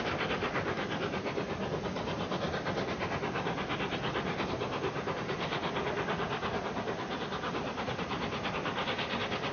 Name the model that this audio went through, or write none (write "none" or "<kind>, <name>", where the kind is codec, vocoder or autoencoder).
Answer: none